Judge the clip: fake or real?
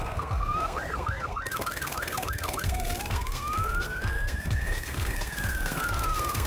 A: fake